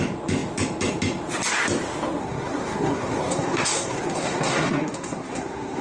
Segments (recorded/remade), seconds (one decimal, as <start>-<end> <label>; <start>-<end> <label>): 0.0-2.2 recorded; 2.2-5.8 remade